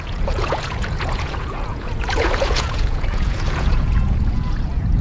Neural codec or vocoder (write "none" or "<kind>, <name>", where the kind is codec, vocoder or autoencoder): vocoder, Vocos